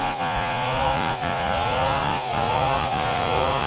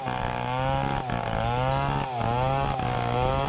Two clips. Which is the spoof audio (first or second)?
first